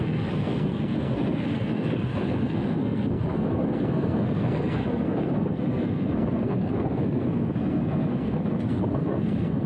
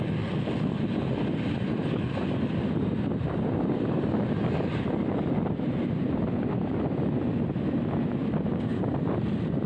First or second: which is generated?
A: first